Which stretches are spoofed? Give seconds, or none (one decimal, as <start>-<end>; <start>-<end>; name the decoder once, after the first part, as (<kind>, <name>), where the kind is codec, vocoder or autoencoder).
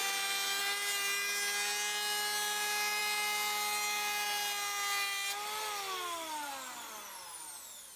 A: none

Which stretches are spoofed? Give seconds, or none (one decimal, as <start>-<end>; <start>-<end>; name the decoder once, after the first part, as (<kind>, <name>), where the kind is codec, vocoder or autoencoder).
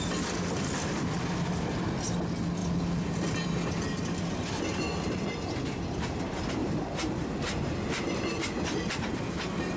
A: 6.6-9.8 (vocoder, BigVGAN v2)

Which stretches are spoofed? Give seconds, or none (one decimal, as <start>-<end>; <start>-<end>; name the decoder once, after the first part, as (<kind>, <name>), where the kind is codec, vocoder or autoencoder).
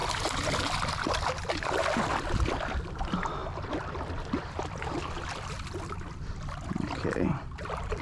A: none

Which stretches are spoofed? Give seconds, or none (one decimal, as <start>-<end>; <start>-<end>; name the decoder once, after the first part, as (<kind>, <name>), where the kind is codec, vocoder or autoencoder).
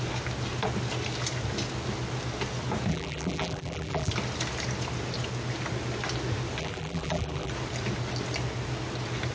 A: 2.9-4.1 (vocoder, BigVGAN v2); 6.6-7.5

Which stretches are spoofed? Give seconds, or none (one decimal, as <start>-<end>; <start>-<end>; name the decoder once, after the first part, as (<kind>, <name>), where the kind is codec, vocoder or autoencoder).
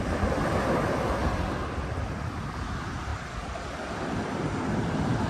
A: none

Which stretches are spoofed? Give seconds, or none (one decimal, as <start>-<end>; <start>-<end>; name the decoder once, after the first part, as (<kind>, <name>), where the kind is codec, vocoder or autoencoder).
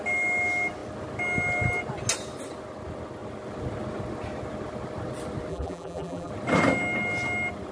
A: 5.5-6.3 (vocoder, BigVGAN v2)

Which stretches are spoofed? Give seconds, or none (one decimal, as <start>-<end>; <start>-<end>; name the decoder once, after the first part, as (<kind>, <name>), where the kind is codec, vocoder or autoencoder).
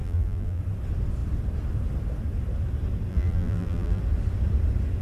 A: 0.0-0.6 (vocoder, BigVGAN v2); 3.1-4.0